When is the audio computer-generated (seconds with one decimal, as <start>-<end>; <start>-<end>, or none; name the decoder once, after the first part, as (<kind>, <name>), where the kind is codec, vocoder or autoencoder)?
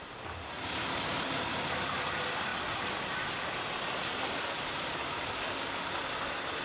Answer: 0.0-2.5 (vocoder, BigVGAN v2)